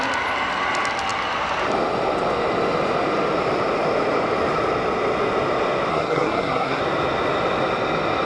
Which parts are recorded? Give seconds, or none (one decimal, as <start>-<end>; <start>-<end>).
0.0-5.9; 6.8-8.3